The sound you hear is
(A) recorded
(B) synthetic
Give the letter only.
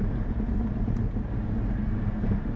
A